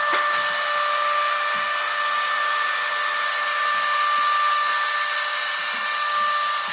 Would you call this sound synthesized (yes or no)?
no